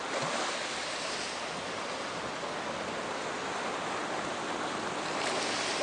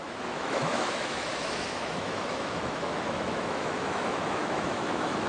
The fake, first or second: second